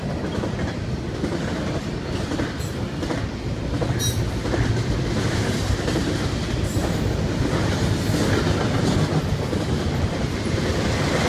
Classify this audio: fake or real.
real